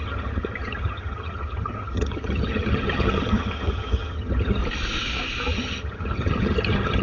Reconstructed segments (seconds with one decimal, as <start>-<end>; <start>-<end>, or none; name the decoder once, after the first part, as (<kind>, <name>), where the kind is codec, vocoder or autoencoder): 0.0-4.6 (vocoder, HiFi-GAN); 5.5-7.0